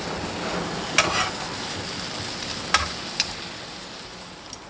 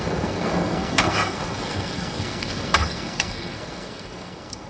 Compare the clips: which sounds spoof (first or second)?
second